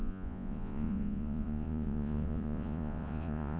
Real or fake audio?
fake